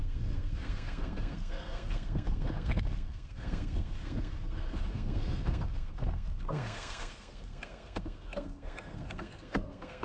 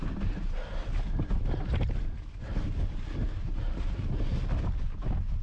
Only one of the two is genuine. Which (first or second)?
second